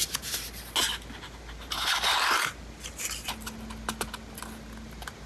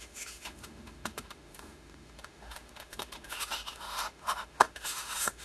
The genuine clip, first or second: first